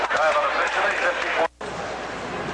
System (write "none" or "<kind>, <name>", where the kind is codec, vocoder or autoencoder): none